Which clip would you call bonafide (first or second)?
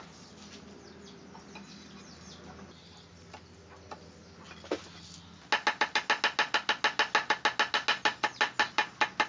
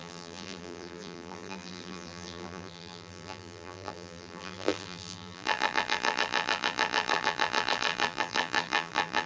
first